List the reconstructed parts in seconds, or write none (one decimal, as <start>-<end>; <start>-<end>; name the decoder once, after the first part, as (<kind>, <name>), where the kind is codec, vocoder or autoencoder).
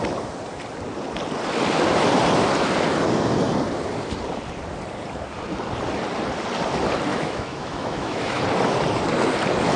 7.1-8.4 (autoencoder, DAC-VAE)